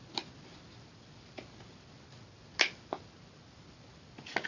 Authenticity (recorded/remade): recorded